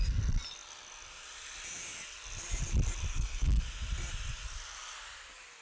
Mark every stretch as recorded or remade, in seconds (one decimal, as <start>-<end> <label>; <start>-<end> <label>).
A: 0.0-3.1 recorded; 3.1-3.6 remade; 3.6-5.6 recorded